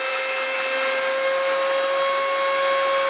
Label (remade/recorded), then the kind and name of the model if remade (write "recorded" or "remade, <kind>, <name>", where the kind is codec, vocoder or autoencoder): recorded